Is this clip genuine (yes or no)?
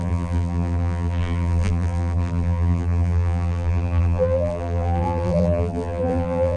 no